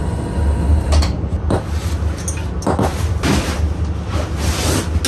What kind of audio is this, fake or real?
real